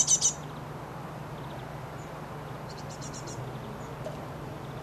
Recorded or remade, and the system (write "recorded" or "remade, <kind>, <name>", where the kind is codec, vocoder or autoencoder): recorded